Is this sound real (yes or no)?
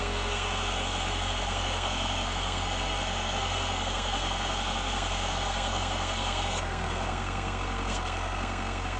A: no